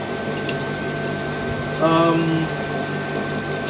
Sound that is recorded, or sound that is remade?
recorded